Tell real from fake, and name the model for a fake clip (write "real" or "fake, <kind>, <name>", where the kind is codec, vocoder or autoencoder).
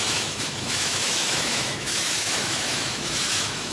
fake, autoencoder, DAC-VAE